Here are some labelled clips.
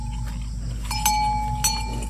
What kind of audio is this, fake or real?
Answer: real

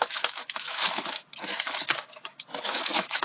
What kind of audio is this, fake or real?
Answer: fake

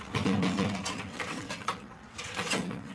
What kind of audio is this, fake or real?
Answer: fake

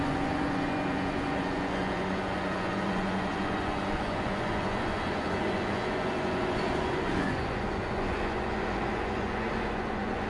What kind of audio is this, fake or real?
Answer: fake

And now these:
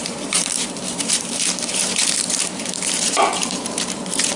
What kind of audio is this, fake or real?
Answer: fake